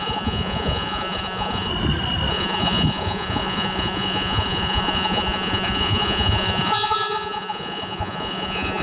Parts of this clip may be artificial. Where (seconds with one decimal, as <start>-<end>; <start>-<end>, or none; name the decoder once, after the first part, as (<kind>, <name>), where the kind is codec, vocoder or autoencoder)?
0.0-1.7 (vocoder, Vocos); 2.3-8.8